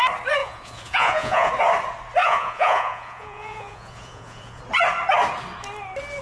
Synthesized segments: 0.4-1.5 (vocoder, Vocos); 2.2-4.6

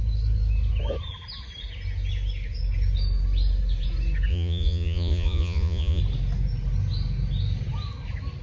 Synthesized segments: 4.3-6.0 (vocoder, Vocos)

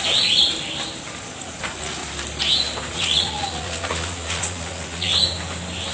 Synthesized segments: 0.0-0.4 (vocoder, Vocos); 1.3-2.0; 2.9-5.1

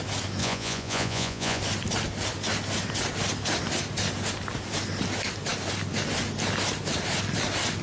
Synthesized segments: 0.4-1.6 (vocoder, Vocos)